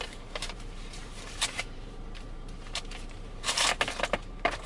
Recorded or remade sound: remade